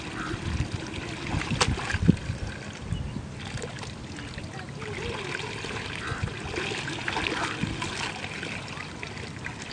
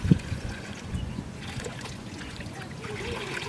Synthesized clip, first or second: second